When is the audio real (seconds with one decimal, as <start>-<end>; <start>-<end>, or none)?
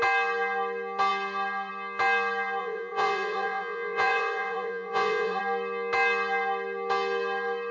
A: 0.0-2.6; 5.4-7.7